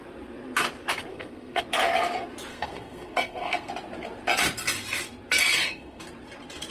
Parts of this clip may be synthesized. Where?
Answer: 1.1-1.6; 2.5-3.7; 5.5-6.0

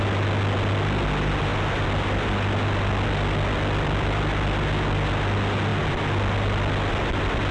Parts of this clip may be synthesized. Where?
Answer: none

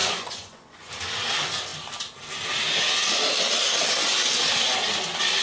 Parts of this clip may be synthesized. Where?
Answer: 0.0-0.9

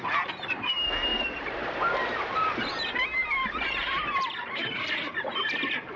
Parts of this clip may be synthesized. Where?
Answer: 1.1-2.7; 3.2-5.0

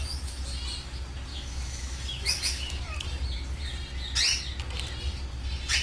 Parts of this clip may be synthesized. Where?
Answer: 1.3-2.8

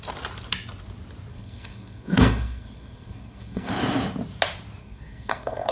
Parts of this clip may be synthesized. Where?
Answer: 1.3-3.7; 4.8-5.7

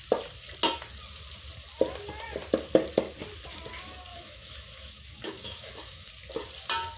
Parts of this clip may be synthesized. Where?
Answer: 4.1-6.1

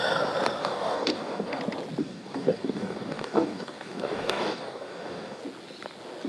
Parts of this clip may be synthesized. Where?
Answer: 0.6-1.6; 2.0-5.4